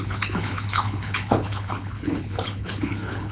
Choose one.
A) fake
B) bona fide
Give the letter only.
A